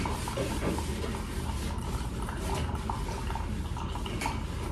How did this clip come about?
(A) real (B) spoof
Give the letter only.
A